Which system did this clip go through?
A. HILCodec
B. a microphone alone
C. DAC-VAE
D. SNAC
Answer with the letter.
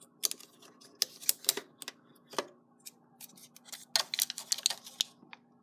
B